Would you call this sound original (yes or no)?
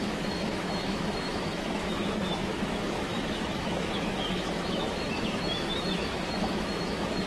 no